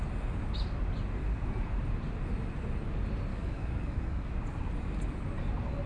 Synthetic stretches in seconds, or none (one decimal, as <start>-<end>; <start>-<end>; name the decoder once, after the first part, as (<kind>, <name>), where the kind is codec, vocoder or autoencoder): 3.3-4.3 (codec, DAC)